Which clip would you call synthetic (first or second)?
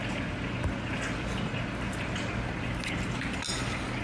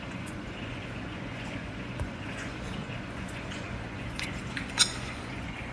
second